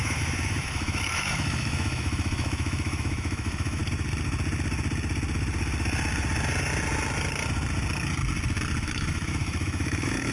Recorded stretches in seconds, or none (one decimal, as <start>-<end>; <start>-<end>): 3.8-8.8